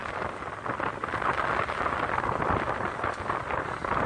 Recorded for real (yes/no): yes